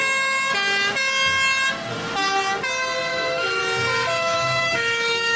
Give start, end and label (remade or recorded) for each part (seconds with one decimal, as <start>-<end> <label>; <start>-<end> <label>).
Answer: 0.0-3.1 recorded; 3.1-3.6 remade; 3.6-4.2 recorded; 4.2-5.4 remade